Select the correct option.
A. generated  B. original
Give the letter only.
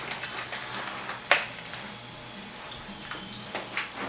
B